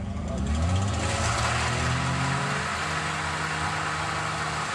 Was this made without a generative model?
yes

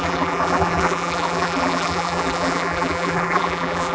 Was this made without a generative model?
no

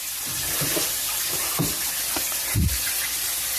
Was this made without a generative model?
yes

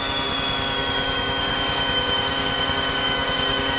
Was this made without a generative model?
no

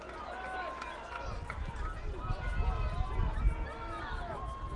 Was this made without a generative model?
yes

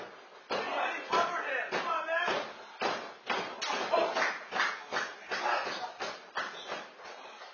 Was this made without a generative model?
yes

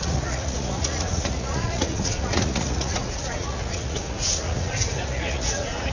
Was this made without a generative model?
no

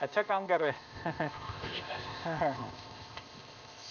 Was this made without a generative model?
no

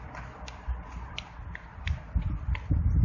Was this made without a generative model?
yes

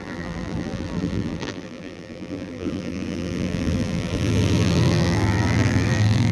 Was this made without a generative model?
no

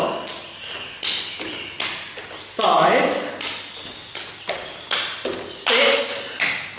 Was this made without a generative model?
yes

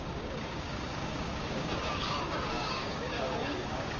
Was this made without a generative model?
no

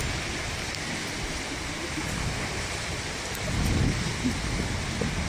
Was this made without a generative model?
yes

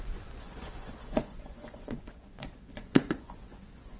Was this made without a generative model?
no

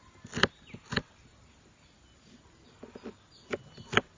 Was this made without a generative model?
yes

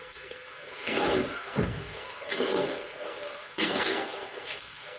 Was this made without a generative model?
no